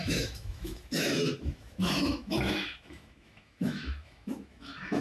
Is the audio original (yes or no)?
no